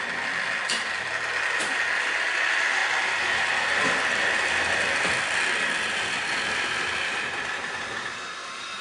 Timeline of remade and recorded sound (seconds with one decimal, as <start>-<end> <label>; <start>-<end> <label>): 0.0-8.8 recorded